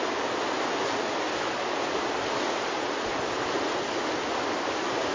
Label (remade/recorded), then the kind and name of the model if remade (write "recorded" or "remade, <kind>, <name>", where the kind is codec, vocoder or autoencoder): recorded